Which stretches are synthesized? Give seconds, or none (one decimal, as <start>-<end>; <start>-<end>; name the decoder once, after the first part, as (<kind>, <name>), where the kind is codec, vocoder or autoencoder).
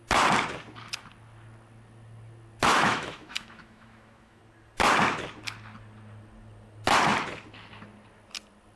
2.7-4.4 (autoencoder, DAC-VAE)